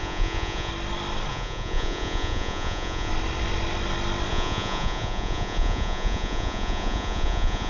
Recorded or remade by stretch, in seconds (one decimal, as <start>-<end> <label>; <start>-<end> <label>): 0.0-0.7 remade; 0.7-1.3 recorded; 1.3-3.1 remade; 3.1-4.3 recorded; 4.3-7.7 remade